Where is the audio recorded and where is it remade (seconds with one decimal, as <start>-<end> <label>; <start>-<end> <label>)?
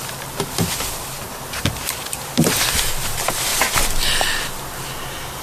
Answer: 0.0-5.4 recorded